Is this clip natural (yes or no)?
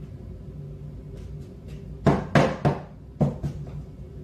yes